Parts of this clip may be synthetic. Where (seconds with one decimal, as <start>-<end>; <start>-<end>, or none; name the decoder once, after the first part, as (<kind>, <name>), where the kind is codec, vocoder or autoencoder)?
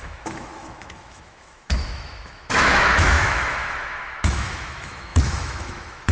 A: 0.0-6.1 (autoencoder, DAC-VAE)